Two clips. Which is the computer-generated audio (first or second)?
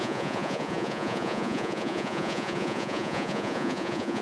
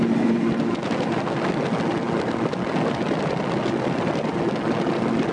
first